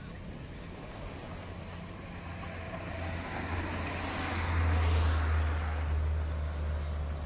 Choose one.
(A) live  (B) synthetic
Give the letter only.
A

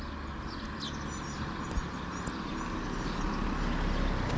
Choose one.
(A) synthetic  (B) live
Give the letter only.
B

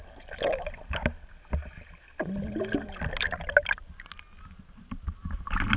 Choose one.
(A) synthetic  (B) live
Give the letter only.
B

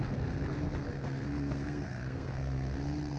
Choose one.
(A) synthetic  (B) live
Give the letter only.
A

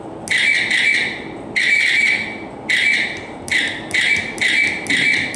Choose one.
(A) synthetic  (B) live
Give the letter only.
B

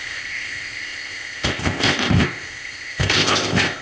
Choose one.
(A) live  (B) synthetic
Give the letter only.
B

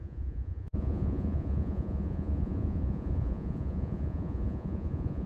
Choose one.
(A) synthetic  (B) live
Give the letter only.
A